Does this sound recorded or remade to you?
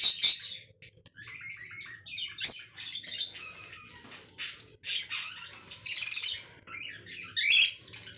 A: recorded